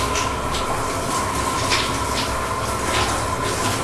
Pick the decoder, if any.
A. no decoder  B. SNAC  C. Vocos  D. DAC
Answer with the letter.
A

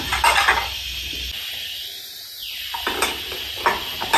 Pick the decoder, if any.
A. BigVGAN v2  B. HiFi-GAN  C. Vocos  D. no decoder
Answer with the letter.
D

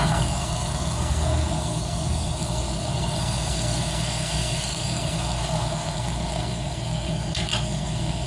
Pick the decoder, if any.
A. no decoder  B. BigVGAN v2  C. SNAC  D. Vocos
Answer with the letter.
C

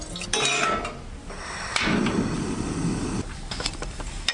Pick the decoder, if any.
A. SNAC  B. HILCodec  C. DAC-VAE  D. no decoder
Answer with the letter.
D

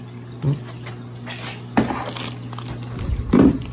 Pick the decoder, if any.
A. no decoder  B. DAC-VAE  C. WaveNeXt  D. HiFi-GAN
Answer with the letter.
A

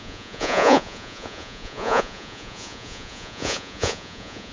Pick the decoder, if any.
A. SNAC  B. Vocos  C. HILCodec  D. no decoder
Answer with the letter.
B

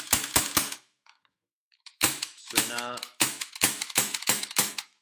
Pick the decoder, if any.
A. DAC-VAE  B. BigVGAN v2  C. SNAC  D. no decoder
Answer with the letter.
A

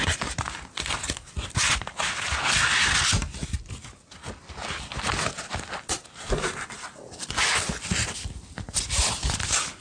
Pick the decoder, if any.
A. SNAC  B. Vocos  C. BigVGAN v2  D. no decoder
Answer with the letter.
D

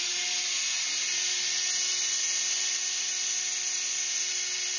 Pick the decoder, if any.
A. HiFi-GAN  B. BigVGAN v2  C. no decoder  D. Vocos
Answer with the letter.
C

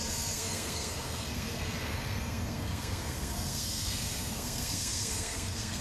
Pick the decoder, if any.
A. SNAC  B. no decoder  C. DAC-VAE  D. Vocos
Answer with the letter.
A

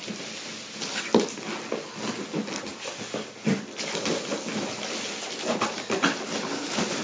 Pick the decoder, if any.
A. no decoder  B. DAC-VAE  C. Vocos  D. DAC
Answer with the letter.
A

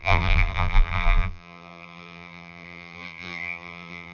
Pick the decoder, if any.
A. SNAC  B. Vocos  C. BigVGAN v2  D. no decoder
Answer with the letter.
C